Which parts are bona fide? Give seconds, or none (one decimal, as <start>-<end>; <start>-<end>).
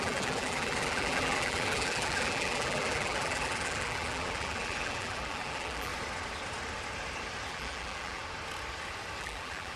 5.9-7.5; 8.2-9.2